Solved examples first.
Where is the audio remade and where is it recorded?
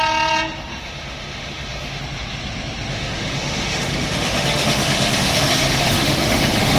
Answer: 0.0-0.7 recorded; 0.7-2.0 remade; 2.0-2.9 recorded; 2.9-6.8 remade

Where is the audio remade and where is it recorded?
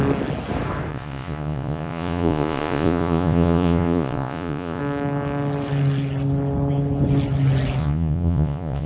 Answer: 0.0-0.9 recorded; 0.9-4.8 remade; 4.8-7.8 recorded; 7.8-8.9 remade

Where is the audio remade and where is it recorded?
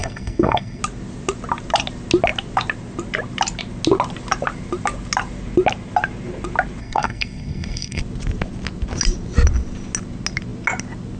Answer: 0.0-0.8 remade; 0.8-6.8 recorded; 6.8-8.0 remade; 8.0-11.2 recorded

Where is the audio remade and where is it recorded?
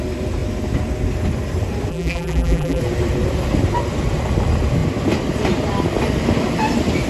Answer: 0.0-1.9 recorded; 1.9-2.8 remade; 2.8-7.1 recorded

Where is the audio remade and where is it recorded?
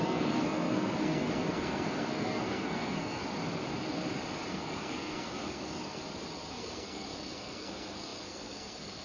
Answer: 0.0-3.2 remade; 3.2-4.5 recorded; 4.5-6.0 remade; 6.0-6.5 recorded; 6.5-9.0 remade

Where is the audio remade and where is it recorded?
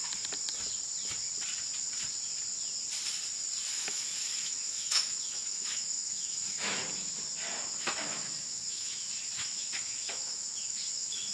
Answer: 0.0-3.7 recorded; 3.7-6.8 remade; 6.8-7.8 recorded; 7.8-11.3 remade